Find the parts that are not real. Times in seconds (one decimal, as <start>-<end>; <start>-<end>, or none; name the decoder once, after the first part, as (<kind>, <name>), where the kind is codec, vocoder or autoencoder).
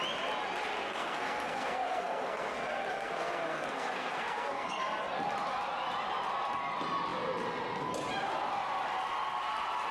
0.8-4.8 (codec, SNAC)